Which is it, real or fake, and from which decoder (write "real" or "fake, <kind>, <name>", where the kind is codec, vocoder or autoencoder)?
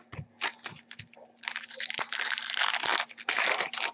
real